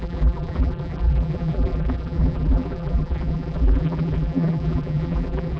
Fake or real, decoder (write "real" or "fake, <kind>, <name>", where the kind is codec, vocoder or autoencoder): fake, vocoder, BigVGAN v2